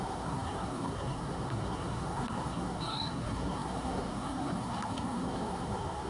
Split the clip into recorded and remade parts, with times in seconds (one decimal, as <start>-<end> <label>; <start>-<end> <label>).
0.0-6.1 remade

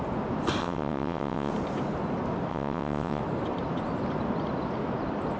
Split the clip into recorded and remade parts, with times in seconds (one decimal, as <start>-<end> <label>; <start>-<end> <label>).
0.0-0.6 recorded; 0.6-1.5 remade; 1.5-2.5 recorded; 2.5-3.2 remade; 3.2-5.4 recorded